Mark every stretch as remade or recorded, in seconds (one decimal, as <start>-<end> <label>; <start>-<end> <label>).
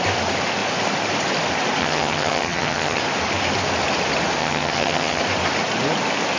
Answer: 0.0-1.8 recorded; 1.8-3.0 remade; 3.0-4.4 recorded; 4.4-5.2 remade; 5.2-6.4 recorded